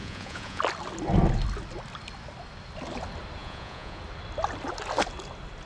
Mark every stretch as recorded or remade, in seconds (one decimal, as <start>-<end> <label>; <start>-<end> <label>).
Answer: 0.0-0.6 remade; 0.6-3.4 recorded; 3.4-4.0 remade; 4.0-5.7 recorded